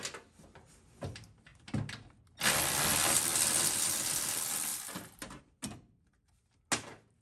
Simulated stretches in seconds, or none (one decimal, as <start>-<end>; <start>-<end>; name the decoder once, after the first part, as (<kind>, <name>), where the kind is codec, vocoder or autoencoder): 4.7-5.4 (vocoder, BigVGAN v2)